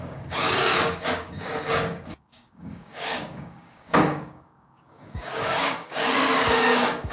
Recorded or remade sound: remade